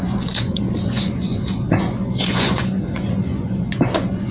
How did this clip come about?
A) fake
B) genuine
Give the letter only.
A